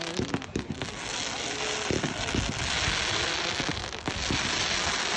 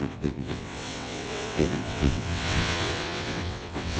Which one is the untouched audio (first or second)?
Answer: first